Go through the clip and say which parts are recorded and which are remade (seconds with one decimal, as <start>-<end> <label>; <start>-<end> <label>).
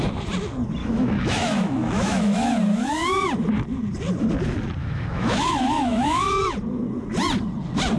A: 0.0-0.8 recorded; 0.8-2.5 remade; 2.5-4.8 recorded; 4.8-6.3 remade; 6.3-8.0 recorded